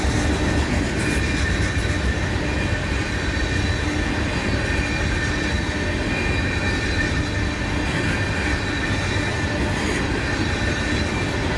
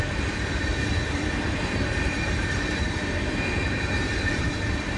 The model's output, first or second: second